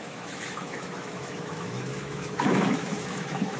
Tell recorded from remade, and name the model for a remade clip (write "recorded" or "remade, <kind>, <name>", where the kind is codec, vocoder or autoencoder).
remade, autoencoder, DAC-VAE